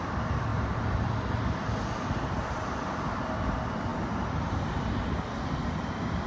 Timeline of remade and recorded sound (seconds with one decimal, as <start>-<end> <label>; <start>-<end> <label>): 0.0-0.5 recorded; 0.5-1.1 remade; 1.1-3.9 recorded; 3.9-5.0 remade; 5.0-6.3 recorded